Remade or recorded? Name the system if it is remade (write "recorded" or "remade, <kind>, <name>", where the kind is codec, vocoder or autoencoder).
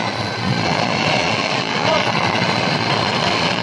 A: remade, vocoder, Vocos